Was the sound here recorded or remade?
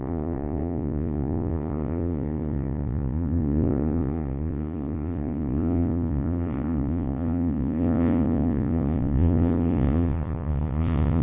remade